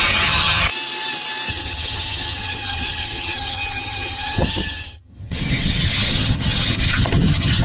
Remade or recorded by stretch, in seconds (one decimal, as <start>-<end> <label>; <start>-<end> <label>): 0.0-0.7 remade; 0.7-1.5 recorded; 1.5-7.6 remade